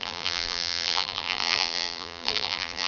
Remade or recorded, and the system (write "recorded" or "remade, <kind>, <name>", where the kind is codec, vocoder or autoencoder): remade, vocoder, BigVGAN v2